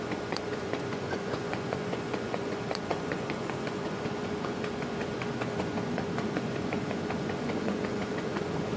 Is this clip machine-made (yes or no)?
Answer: yes